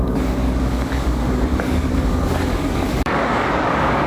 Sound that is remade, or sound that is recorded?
remade